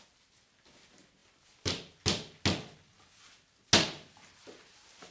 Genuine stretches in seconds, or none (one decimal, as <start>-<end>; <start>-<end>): 0.0-5.1